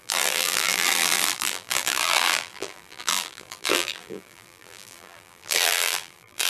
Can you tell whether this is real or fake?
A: fake